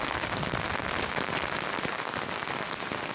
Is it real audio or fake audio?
real